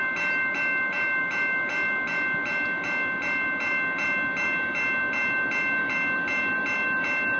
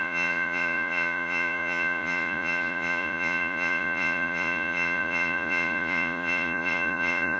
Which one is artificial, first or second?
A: second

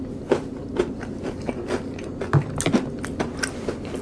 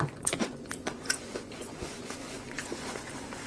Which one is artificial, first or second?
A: second